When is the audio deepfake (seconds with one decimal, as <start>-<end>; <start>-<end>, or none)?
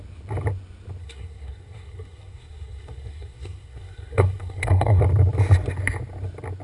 1.0-5.0